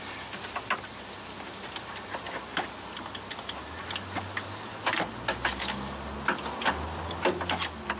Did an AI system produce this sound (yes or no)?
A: no